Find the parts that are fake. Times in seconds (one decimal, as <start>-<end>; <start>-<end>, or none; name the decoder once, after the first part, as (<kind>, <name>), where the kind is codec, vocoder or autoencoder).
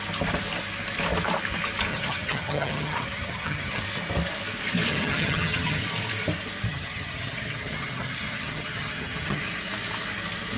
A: 1.9-3.8 (vocoder, HiFi-GAN); 4.9-5.8; 6.7-9.4